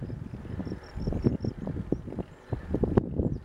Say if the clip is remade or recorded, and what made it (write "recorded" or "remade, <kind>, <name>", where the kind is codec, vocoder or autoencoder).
recorded